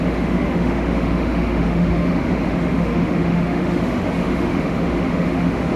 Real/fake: fake